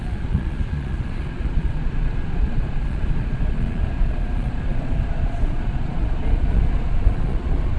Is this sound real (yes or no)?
no